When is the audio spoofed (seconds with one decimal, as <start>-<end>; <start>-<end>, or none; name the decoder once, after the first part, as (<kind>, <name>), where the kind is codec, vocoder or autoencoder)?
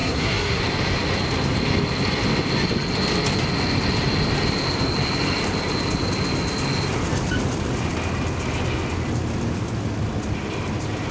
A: 0.0-0.6 (codec, SNAC)